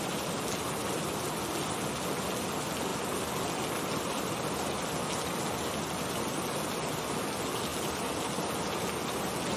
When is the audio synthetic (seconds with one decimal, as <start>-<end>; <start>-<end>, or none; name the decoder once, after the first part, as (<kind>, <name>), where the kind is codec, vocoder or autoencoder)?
none